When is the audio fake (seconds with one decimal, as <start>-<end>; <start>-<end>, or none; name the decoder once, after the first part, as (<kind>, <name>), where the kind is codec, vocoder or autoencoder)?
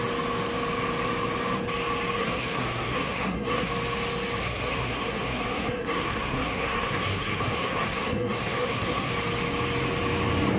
2.2-3.7 (codec, SNAC); 4.4-9.1